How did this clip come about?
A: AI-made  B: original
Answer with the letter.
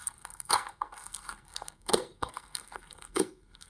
A